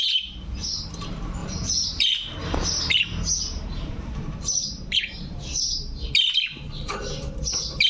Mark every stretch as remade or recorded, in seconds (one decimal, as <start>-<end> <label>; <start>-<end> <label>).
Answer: 0.0-1.4 recorded; 1.4-6.1 remade; 6.1-7.9 recorded